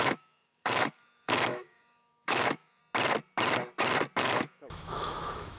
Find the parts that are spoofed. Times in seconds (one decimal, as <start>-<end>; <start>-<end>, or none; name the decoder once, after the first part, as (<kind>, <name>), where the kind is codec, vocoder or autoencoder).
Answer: 0.0-2.8 (autoencoder, DAC-VAE); 4.2-5.6